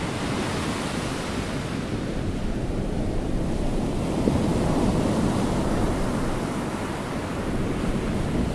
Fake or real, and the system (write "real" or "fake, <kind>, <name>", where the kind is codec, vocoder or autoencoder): real